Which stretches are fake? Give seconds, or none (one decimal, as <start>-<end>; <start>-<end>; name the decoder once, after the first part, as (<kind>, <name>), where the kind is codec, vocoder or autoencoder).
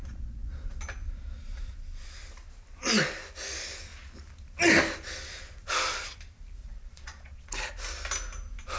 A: 0.0-0.8 (vocoder, Vocos); 6.6-7.5